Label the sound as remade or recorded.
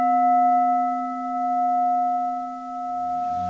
recorded